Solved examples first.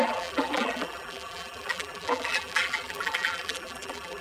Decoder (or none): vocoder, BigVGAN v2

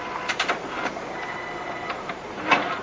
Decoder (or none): vocoder, BigVGAN v2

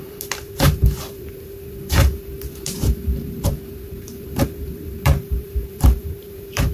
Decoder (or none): vocoder, BigVGAN v2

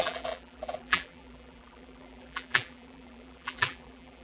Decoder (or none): vocoder, BigVGAN v2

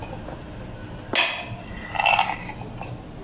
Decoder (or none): none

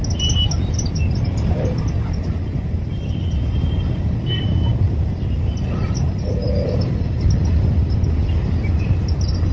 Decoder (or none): none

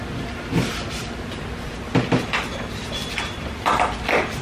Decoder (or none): none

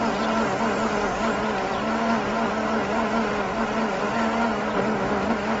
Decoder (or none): none